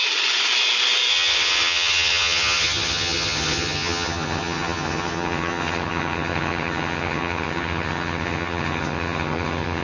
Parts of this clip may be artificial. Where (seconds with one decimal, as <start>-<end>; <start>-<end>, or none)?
1.1-9.8